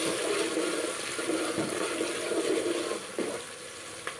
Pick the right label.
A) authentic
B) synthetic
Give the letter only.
A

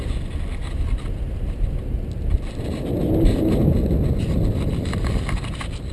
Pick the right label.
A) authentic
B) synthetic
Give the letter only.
A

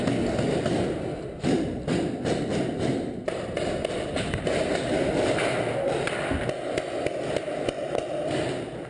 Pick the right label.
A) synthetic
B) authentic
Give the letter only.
B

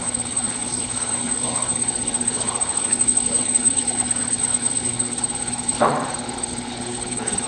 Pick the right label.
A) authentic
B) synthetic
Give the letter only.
B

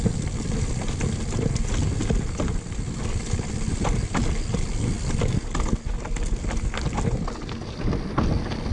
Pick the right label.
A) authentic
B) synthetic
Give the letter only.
A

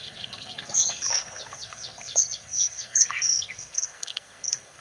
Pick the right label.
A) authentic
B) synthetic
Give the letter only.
B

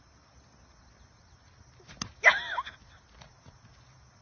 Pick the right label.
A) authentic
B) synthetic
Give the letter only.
A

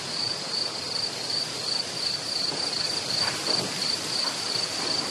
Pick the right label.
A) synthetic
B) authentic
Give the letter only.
B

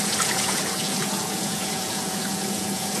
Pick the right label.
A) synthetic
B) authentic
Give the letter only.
A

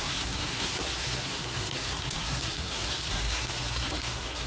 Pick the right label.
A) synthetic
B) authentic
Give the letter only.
A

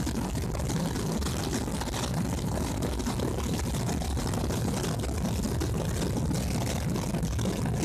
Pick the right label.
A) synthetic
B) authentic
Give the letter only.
B